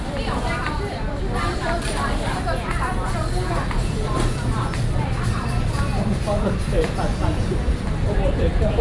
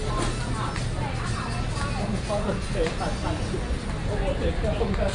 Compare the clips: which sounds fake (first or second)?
first